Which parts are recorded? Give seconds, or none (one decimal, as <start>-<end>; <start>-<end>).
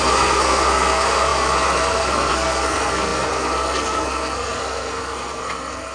none